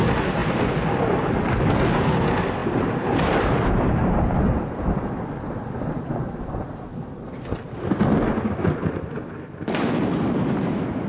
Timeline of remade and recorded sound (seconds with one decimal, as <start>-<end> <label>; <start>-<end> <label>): 0.0-2.6 recorded; 2.6-5.1 remade; 5.1-6.9 recorded; 6.9-7.5 remade; 7.5-11.1 recorded